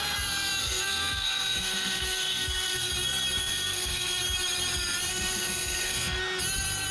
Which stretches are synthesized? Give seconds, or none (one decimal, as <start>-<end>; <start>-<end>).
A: 0.6-2.9; 3.4-4.2; 5.1-6.2